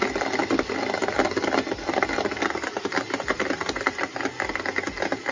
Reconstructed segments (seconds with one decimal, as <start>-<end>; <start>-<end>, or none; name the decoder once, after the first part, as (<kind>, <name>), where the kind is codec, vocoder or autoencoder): none